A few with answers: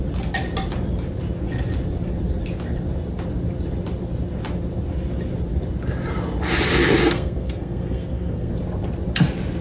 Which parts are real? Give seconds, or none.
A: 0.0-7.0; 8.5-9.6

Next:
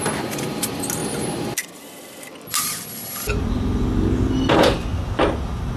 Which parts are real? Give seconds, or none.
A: 0.0-5.8

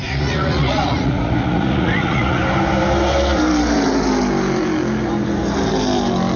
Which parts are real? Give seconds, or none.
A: 2.4-6.4

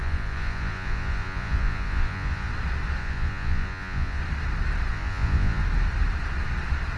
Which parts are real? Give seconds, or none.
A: 2.5-3.0; 4.2-4.9; 5.6-7.0

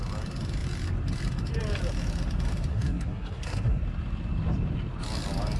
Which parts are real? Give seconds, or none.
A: 0.0-2.7; 3.8-5.6

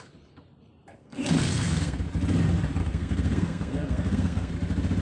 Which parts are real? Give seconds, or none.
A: 0.0-0.9; 2.0-2.8; 4.5-5.0